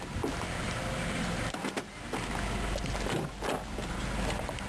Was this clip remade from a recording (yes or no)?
no